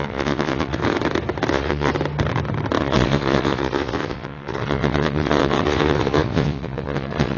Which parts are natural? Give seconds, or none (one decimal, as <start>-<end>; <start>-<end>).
0.8-1.5; 1.9-2.8

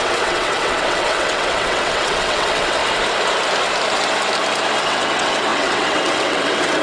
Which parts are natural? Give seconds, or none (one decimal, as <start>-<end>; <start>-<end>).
2.8-4.8

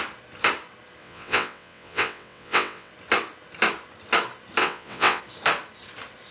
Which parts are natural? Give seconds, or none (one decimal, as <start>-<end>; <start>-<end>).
0.0-1.0; 2.9-4.6; 5.2-6.3

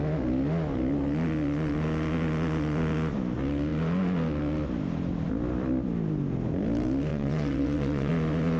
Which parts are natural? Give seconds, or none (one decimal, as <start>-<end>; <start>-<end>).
0.0-7.1; 8.1-8.6

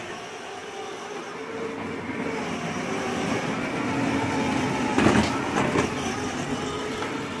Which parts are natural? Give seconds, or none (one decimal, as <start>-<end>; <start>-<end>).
0.0-7.4

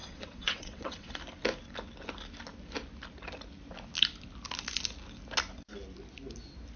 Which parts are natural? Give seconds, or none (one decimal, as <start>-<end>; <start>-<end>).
1.2-6.8

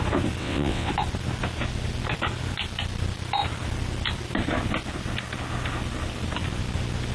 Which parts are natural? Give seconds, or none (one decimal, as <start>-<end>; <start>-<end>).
0.0-0.4; 0.9-7.1